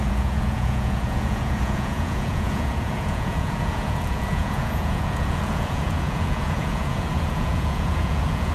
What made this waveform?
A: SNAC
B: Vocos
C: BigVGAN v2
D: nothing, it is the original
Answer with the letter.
B